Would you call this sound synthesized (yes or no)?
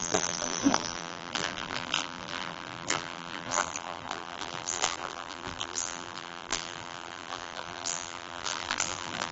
yes